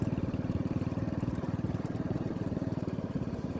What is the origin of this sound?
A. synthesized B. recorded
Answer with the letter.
A